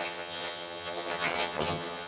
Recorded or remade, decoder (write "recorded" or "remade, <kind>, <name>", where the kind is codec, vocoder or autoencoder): remade, vocoder, HiFi-GAN